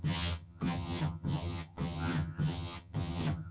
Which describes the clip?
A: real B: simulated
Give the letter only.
B